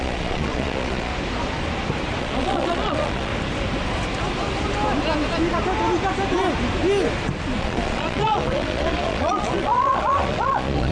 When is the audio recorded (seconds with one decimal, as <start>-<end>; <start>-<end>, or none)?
1.1-2.2; 3.3-7.6